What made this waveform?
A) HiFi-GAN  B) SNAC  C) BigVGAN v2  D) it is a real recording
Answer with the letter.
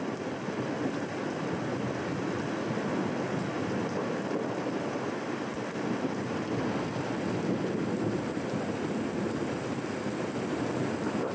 D